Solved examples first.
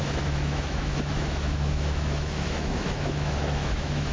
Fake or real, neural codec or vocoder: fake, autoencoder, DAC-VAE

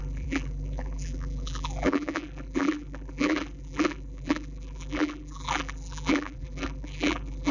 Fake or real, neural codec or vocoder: fake, vocoder, BigVGAN v2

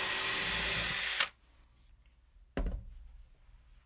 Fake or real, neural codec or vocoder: real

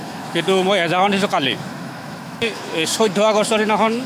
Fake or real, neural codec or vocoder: fake, autoencoder, DAC-VAE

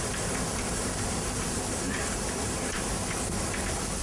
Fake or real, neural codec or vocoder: fake, vocoder, BigVGAN v2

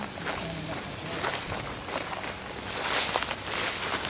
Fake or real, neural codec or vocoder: real